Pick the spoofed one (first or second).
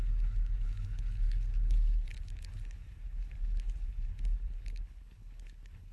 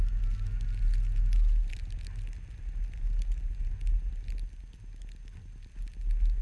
first